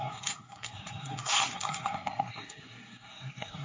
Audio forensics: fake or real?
fake